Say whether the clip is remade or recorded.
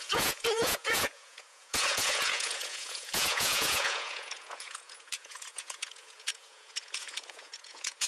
remade